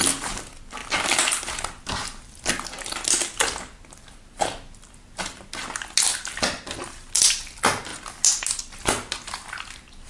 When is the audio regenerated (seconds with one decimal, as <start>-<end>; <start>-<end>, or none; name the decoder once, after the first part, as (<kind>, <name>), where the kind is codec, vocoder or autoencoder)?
none